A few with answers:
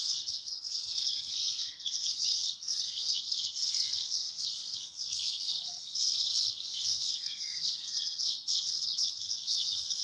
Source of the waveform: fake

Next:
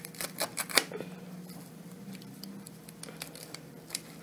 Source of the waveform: fake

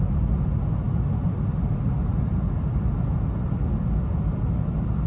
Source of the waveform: real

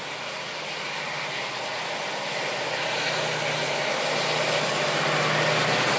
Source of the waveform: real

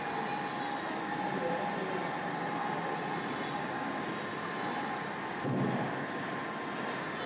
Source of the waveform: real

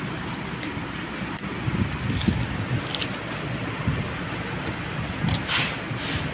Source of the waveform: real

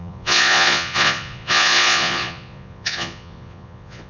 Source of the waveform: fake